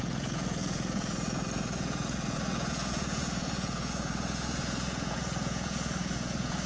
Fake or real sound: fake